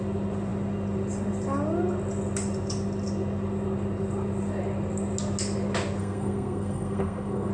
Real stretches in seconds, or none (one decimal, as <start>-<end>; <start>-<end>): 0.0-6.0